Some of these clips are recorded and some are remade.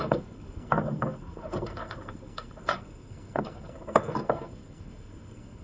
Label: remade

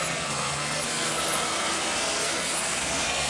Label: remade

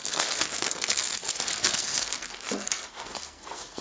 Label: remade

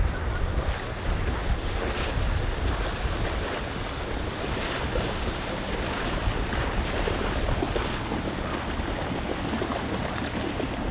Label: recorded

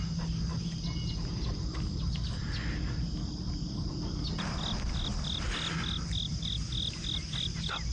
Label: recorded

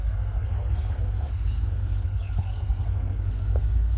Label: remade